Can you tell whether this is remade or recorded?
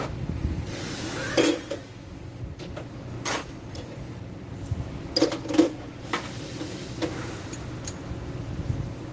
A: recorded